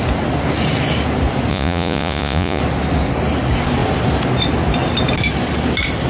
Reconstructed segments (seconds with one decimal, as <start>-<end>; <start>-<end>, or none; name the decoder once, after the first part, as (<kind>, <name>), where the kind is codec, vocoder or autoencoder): 1.5-2.6 (vocoder, Vocos)